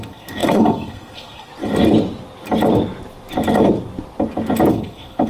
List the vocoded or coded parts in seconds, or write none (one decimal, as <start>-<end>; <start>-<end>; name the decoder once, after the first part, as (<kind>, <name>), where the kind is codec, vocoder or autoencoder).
0.0-1.5 (codec, SNAC); 4.7-5.3